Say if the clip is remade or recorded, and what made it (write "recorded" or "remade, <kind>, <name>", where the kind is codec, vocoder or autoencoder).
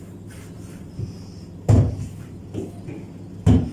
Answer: recorded